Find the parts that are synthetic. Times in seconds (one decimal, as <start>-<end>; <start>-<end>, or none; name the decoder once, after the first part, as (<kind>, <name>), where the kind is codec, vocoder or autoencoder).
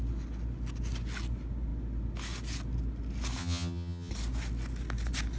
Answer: 3.4-4.1 (vocoder, HiFi-GAN)